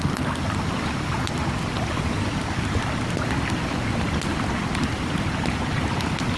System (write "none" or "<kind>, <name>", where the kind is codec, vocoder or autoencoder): none